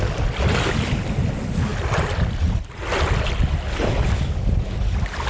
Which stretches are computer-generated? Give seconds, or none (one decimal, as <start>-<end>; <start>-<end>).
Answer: none